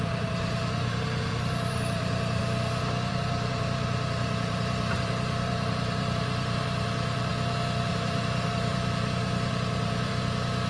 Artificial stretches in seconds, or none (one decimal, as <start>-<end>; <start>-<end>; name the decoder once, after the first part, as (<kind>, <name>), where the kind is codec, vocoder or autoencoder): 0.0-2.4 (vocoder, BigVGAN v2); 3.1-7.3; 7.9-10.1